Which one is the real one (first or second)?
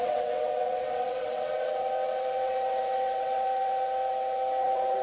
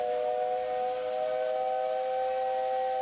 second